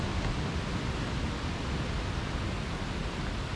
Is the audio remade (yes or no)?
no